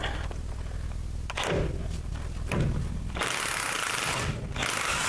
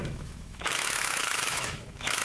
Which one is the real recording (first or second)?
first